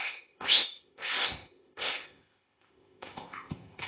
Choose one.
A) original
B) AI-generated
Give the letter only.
B